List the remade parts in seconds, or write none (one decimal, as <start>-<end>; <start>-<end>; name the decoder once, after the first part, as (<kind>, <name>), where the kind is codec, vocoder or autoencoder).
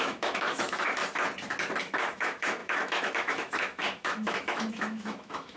0.0-1.0 (autoencoder, DAC-VAE); 1.8-5.6